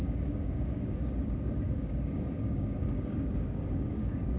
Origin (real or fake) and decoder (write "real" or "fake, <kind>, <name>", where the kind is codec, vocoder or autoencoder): fake, codec, DAC